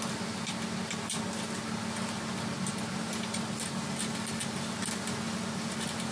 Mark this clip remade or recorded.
recorded